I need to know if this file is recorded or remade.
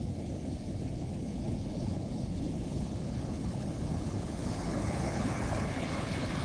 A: remade